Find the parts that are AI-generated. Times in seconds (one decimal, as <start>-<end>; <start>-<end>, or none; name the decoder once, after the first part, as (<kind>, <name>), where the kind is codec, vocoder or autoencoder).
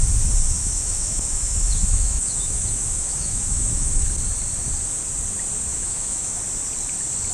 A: 0.6-4.1 (autoencoder, DAC-VAE); 5.7-6.4